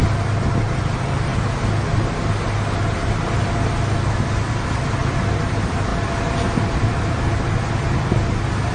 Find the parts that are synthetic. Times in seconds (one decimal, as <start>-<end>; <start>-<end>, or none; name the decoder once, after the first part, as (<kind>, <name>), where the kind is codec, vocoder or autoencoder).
0.6-1.3 (vocoder, BigVGAN v2); 4.5-8.7